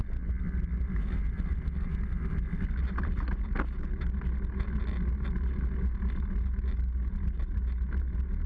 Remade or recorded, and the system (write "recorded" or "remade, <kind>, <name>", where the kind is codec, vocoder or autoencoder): recorded